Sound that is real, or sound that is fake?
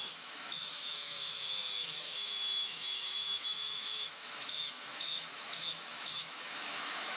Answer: fake